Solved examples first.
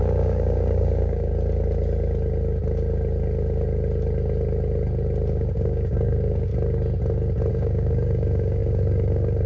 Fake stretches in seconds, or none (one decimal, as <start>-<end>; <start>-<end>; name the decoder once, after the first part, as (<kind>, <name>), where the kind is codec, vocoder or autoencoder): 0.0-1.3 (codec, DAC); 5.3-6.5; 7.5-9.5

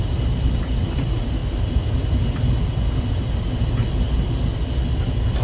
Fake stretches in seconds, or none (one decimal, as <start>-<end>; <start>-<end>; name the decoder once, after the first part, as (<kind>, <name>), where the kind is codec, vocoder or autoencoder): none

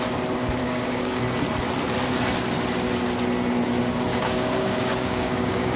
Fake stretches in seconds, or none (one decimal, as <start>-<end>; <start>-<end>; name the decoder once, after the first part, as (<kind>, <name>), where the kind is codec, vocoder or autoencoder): 0.6-1.2 (codec, DAC); 4.1-5.8